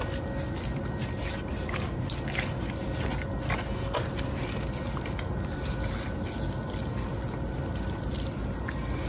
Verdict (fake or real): real